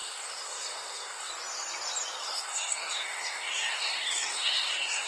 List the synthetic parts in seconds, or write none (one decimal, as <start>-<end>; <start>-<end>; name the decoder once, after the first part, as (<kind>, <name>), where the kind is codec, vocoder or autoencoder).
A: 0.0-1.3 (codec, SNAC); 2.2-5.1